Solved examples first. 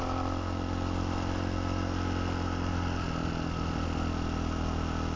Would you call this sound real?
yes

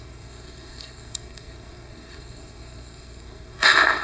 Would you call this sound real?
no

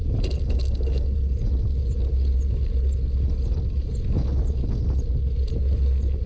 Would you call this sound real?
yes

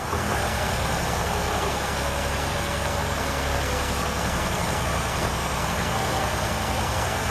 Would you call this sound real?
no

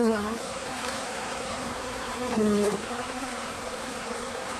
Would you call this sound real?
no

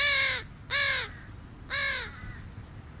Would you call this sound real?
yes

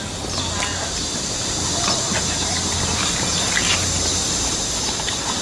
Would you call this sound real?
no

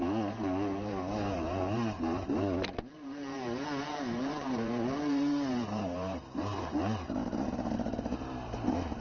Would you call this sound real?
no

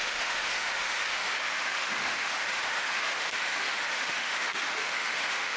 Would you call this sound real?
no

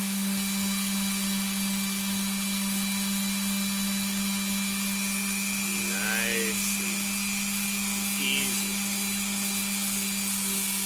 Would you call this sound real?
yes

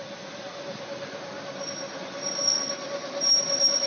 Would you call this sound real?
yes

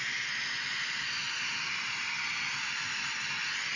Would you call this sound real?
yes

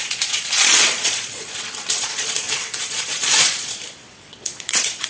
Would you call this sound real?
no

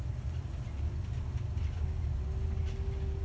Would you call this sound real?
yes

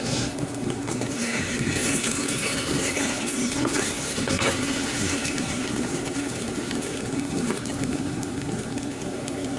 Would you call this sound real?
no